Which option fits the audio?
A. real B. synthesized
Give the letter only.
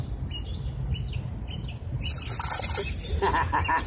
A